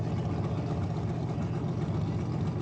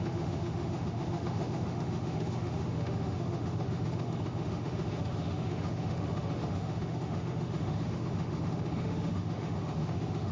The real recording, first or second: first